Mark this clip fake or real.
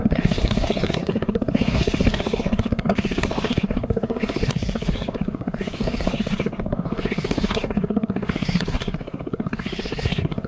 fake